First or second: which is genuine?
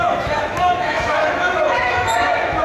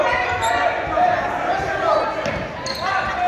second